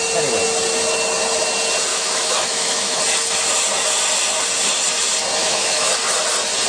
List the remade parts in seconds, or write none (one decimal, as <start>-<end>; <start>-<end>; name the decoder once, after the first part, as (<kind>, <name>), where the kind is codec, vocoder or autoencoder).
1.9-3.0 (autoencoder, DAC-VAE); 5.4-5.9